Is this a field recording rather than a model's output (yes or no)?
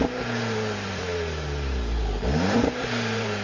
no